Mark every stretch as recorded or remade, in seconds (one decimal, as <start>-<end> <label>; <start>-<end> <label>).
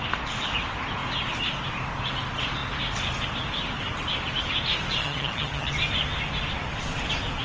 0.0-5.0 recorded; 5.0-5.7 remade; 5.7-7.4 recorded